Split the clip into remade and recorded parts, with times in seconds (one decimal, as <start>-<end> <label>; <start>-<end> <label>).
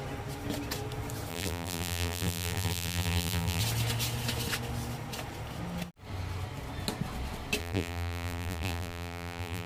0.0-1.3 recorded; 1.3-3.6 remade; 3.6-7.6 recorded; 7.6-9.7 remade